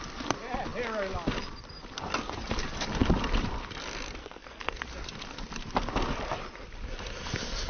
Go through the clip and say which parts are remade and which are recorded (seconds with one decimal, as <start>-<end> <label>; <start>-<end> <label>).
0.0-4.2 recorded; 4.2-4.8 remade; 4.8-7.7 recorded

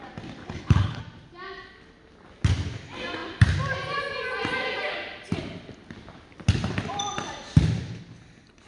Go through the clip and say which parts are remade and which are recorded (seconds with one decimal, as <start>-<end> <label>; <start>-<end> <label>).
0.0-0.4 recorded; 0.4-1.0 remade; 1.0-8.7 recorded

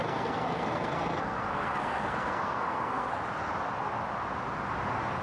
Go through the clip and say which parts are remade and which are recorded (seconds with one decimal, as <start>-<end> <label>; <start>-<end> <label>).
0.0-3.1 remade; 3.1-5.2 recorded

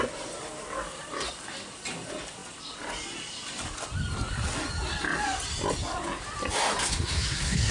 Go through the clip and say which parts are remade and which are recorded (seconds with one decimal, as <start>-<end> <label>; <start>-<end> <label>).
0.0-6.8 recorded; 6.8-7.7 remade